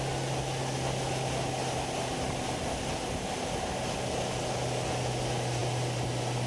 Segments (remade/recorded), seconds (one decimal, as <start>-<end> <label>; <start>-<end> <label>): 0.0-6.5 recorded